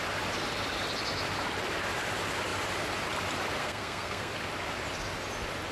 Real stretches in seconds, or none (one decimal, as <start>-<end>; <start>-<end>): 0.0-3.6; 4.3-5.7